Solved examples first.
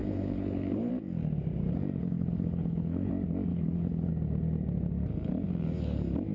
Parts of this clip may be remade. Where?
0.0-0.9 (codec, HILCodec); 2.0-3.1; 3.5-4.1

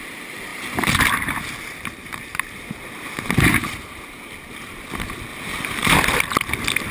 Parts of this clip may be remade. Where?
0.5-4.1 (vocoder, BigVGAN v2); 5.3-5.9

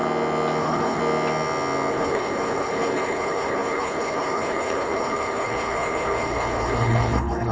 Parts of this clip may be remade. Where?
0.6-1.0 (codec, HILCodec); 1.9-7.5

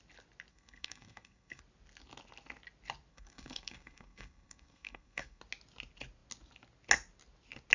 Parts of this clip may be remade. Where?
0.5-1.6 (codec, SNAC); 3.1-5.4

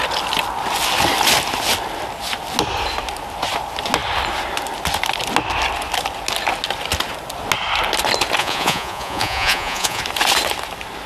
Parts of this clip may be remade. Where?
8.4-10.0 (vocoder, Vocos)